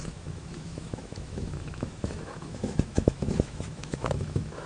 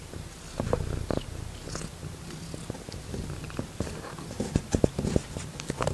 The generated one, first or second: first